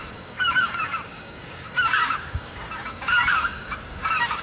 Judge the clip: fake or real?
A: fake